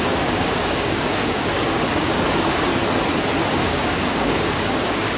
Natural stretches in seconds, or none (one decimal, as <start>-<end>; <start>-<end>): 2.7-3.5